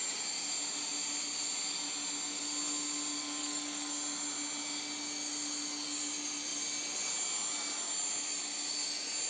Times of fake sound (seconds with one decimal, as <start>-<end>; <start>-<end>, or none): 3.4-3.9